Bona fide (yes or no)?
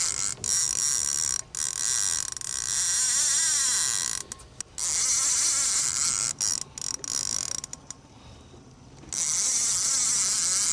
yes